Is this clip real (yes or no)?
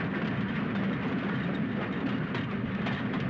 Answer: yes